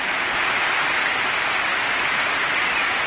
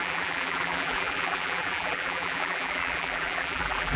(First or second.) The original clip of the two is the first